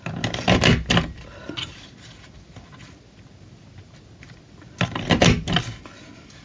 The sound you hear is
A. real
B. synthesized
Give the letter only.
A